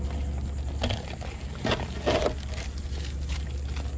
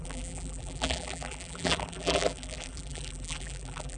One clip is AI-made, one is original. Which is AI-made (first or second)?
second